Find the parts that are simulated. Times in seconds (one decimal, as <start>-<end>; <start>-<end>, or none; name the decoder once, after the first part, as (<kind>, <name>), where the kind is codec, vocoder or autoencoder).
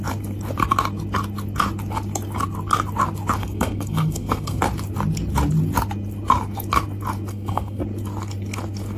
3.4-4.6 (codec, SNAC); 7.3-7.8